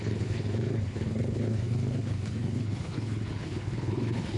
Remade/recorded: remade